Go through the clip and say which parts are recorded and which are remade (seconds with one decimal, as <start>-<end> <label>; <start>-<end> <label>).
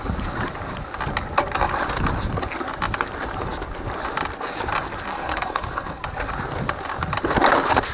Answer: 0.0-5.1 recorded; 5.1-6.0 remade; 6.0-7.9 recorded